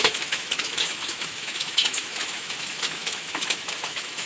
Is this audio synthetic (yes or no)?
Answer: yes